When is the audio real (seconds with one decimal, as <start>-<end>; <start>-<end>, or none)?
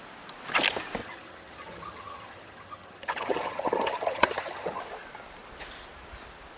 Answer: 0.0-1.0; 4.8-6.6